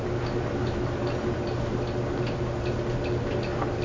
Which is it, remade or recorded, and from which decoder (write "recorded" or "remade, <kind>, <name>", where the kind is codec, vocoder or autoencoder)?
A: recorded